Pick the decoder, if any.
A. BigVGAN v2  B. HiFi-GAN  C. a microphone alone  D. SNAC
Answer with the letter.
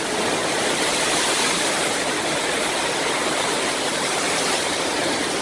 A